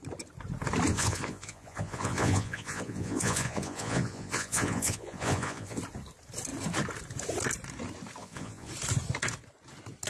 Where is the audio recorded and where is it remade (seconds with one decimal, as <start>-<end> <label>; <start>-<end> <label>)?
0.0-0.9 recorded; 0.9-5.8 remade; 5.8-8.2 recorded; 8.2-8.7 remade; 8.7-10.1 recorded